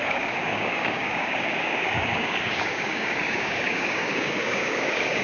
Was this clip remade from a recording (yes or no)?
yes